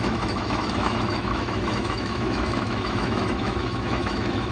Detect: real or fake fake